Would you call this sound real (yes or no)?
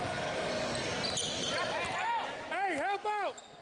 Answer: yes